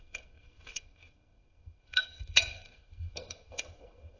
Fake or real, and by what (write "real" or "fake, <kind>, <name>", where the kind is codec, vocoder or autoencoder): fake, codec, SNAC